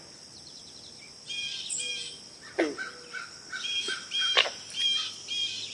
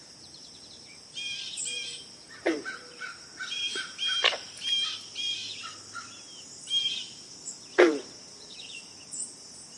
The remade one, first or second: second